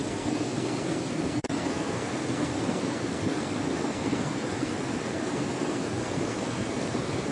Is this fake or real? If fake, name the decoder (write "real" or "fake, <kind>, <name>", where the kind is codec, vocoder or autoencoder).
fake, codec, SNAC